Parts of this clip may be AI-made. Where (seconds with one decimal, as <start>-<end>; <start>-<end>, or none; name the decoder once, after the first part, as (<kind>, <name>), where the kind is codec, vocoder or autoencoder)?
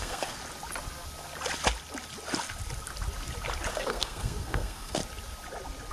0.0-0.4 (codec, SNAC); 3.7-5.0